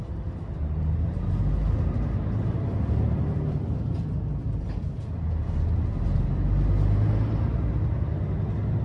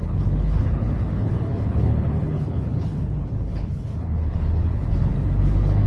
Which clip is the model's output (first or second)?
second